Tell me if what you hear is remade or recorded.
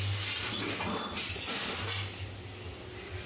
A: recorded